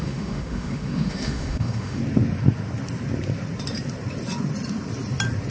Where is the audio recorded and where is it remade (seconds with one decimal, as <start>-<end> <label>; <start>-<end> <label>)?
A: 0.0-2.0 remade; 2.0-5.5 recorded